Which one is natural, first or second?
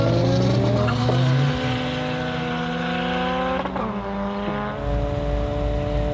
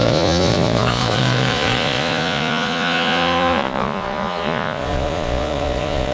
first